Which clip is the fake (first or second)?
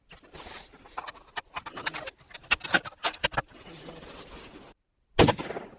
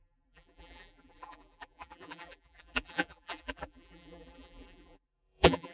second